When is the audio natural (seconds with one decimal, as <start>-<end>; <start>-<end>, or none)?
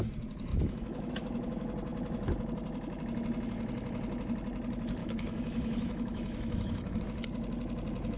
0.0-0.5; 1.1-5.0; 7.0-8.2